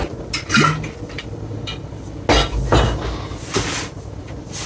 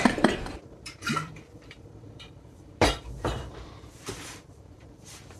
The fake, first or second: second